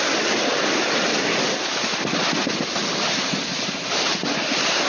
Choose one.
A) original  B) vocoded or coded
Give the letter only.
A